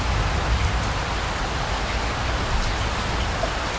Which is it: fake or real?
real